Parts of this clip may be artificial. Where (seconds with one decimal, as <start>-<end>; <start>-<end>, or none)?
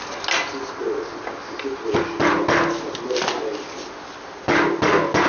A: none